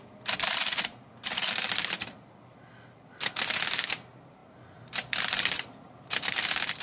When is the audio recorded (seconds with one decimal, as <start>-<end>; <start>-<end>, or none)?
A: 0.0-6.8